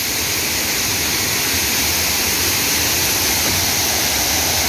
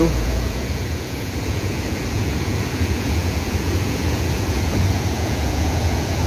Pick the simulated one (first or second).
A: second